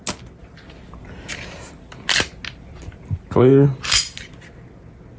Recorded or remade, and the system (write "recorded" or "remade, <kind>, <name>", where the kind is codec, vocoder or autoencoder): recorded